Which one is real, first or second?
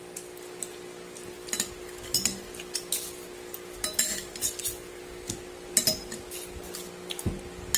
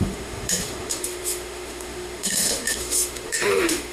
first